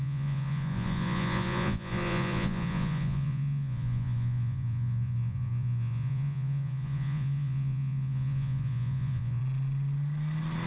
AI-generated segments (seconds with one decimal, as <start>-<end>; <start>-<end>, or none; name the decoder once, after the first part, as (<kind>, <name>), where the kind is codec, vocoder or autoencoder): 0.0-9.4 (vocoder, Vocos)